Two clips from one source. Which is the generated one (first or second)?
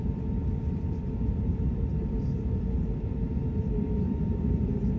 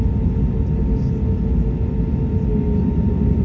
first